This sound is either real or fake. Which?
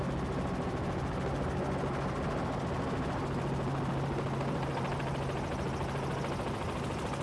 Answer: real